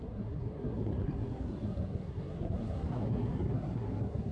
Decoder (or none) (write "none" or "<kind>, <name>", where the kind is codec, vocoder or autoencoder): codec, SNAC